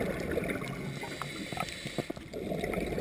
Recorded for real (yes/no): yes